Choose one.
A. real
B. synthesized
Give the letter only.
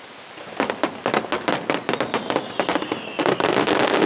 A